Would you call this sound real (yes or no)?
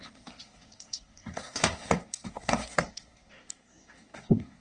no